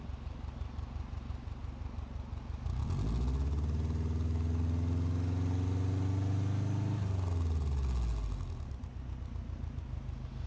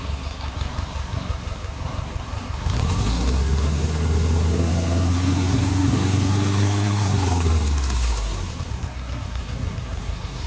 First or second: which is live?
first